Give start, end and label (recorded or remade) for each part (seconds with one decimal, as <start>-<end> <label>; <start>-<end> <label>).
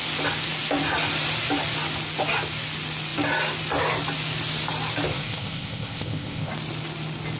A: 0.0-5.1 recorded; 5.1-6.5 remade; 6.5-7.4 recorded